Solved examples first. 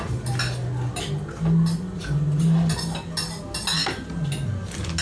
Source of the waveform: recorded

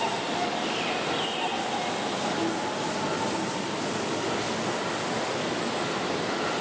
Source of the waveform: recorded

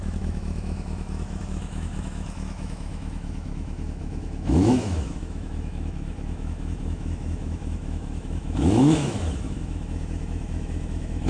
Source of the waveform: remade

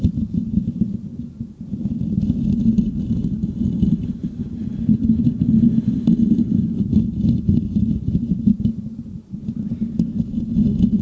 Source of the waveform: recorded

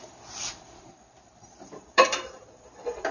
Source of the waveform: remade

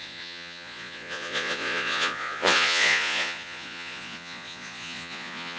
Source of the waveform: remade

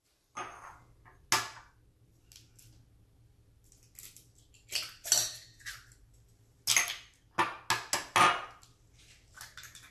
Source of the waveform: recorded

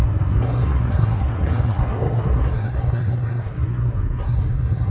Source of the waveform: remade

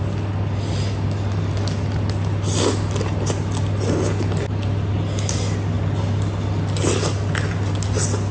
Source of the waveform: recorded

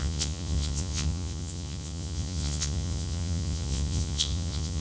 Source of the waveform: remade